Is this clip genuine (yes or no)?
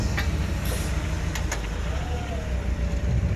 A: yes